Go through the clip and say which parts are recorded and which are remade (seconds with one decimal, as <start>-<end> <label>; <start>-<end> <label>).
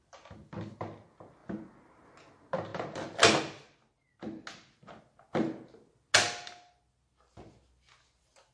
0.0-8.5 recorded